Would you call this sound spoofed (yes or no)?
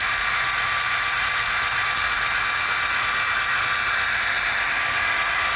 no